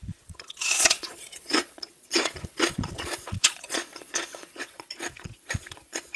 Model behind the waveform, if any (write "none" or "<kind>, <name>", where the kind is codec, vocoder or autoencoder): vocoder, Vocos